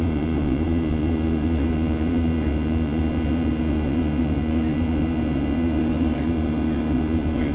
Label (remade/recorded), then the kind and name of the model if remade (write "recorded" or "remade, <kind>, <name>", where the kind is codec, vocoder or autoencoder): remade, vocoder, Vocos